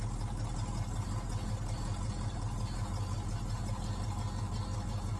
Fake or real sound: real